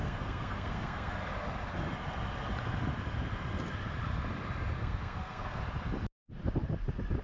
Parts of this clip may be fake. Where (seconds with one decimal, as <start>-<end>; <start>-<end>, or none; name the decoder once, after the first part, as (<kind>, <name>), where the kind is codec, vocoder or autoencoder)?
0.0-1.1 (codec, SNAC); 4.8-5.6